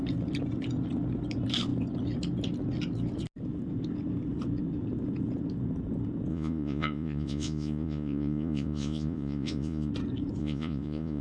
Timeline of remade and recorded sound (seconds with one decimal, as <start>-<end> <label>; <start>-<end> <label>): 0.0-6.3 recorded; 6.3-9.9 remade; 9.9-10.4 recorded; 10.4-11.2 remade